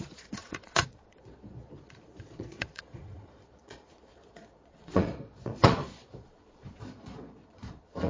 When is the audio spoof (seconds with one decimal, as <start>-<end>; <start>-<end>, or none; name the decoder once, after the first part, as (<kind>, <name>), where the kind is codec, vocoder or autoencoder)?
0.0-8.1 (vocoder, Vocos)